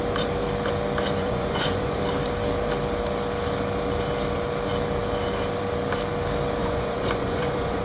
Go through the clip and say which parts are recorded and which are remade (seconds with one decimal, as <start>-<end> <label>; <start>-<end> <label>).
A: 0.0-1.2 recorded; 1.2-2.0 remade; 2.0-6.6 recorded; 6.6-7.8 remade